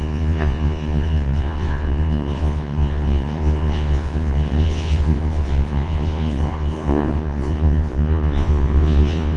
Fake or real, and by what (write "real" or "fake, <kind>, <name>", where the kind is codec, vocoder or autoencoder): fake, vocoder, Vocos